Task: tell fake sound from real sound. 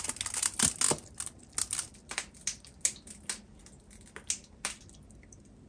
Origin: real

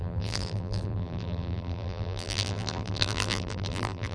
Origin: fake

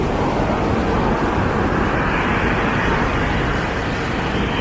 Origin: fake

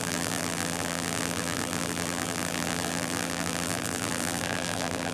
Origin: fake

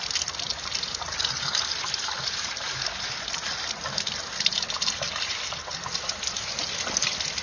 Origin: fake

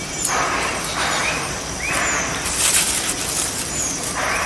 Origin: fake